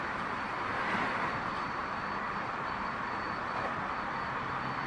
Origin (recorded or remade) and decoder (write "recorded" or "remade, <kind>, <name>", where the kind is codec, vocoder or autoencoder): remade, vocoder, BigVGAN v2